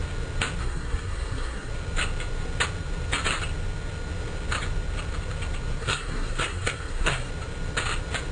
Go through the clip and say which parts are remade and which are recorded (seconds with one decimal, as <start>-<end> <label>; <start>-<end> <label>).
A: 0.0-0.6 recorded; 0.6-1.7 remade; 1.7-5.8 recorded; 5.8-7.3 remade; 7.3-8.3 recorded